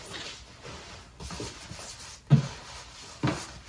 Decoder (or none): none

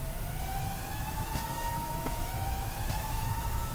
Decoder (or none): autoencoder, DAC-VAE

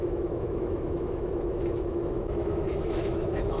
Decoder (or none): autoencoder, DAC-VAE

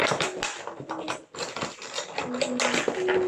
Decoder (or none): none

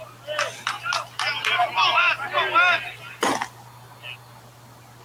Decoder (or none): none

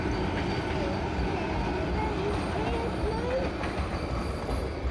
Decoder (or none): none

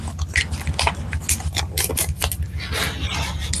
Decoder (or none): none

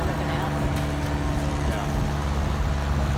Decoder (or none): none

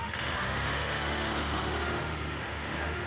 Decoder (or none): autoencoder, DAC-VAE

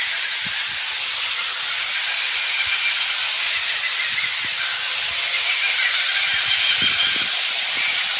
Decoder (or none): none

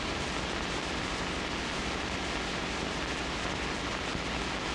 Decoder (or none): none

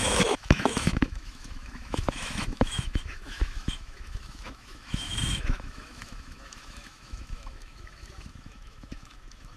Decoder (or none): autoencoder, DAC-VAE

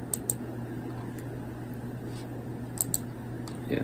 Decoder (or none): none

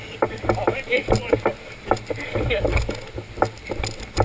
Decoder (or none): none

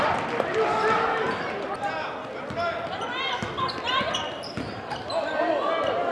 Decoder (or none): none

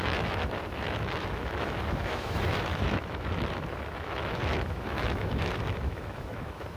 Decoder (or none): autoencoder, DAC-VAE